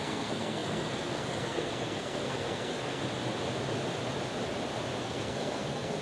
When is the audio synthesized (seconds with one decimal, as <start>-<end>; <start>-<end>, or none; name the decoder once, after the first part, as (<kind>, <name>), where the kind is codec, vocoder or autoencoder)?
0.0-3.0 (codec, SNAC); 5.0-6.0

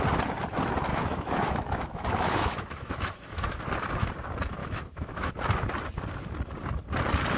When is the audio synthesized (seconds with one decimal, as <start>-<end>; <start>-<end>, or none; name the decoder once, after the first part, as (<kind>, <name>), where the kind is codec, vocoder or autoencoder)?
0.9-3.6 (autoencoder, DAC-VAE); 4.6-5.3

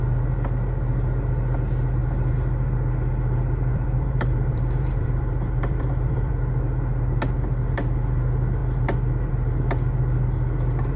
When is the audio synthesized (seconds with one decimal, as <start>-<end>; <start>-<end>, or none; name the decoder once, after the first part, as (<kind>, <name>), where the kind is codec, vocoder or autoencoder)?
3.7-6.3 (vocoder, BigVGAN v2)

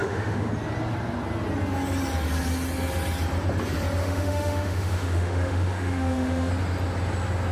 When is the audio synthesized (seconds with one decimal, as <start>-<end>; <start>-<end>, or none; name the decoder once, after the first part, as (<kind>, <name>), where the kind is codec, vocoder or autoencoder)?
0.0-0.5 (autoencoder, DAC-VAE); 4.0-6.5

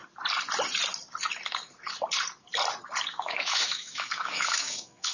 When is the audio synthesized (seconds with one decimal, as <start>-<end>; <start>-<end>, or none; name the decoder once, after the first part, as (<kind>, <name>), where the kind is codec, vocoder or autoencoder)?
3.1-5.1 (autoencoder, DAC-VAE)

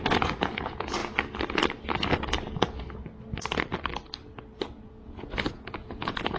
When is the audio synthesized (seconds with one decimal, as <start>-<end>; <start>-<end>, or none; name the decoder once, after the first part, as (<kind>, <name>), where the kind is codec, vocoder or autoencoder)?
0.0-1.0 (vocoder, Vocos); 4.7-6.4

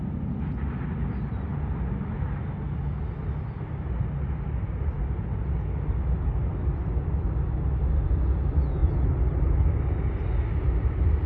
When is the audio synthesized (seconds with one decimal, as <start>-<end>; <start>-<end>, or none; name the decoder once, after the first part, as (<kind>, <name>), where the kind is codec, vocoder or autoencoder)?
none

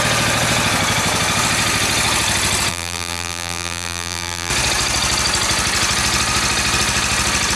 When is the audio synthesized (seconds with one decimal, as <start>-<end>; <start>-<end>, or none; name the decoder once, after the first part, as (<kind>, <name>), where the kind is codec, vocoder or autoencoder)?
2.7-4.5 (vocoder, BigVGAN v2)